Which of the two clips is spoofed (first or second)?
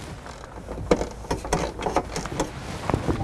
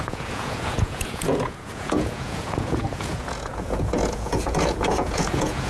second